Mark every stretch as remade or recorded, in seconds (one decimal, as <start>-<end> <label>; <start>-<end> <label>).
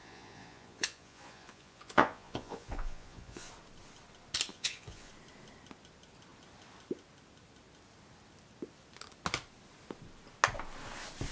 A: 0.0-3.5 remade; 3.5-4.5 recorded; 4.5-5.1 remade; 5.1-11.3 recorded